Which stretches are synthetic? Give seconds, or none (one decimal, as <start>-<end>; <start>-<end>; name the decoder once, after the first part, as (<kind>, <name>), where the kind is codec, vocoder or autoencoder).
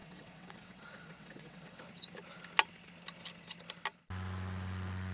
0.0-1.8 (vocoder, WaveNeXt)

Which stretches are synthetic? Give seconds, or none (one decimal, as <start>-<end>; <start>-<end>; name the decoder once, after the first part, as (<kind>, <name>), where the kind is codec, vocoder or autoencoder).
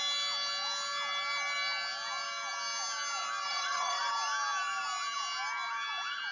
3.5-4.1 (vocoder, WaveNeXt)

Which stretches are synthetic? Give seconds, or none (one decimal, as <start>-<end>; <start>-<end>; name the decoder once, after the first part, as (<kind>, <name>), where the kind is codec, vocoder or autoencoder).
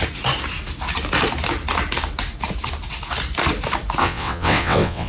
4.0-5.1 (vocoder, WaveNeXt)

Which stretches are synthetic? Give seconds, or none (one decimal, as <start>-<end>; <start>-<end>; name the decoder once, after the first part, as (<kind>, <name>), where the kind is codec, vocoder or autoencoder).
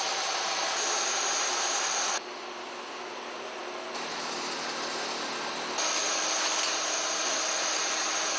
none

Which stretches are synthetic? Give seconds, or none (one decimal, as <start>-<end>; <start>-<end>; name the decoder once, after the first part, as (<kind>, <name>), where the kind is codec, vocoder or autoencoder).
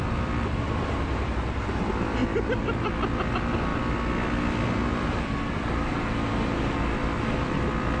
none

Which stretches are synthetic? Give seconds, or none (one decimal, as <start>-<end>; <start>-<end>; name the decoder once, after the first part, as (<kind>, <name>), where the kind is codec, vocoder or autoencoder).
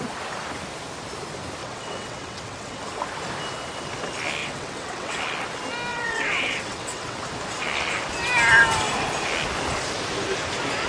1.6-2.8 (vocoder, WaveNeXt); 4.4-5.2; 5.9-7.2